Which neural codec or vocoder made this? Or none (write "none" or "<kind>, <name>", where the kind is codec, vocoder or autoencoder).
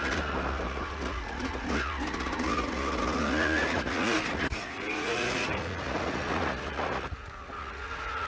vocoder, Vocos